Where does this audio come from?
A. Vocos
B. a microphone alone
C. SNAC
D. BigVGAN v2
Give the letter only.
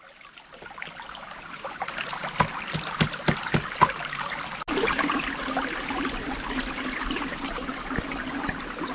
B